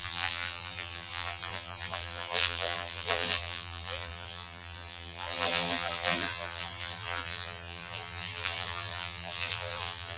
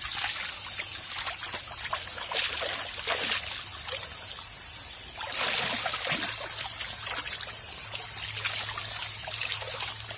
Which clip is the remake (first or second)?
first